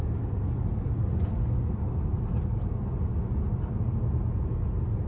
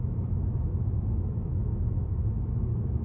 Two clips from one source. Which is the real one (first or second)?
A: first